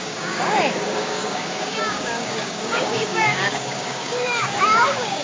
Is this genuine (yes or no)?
no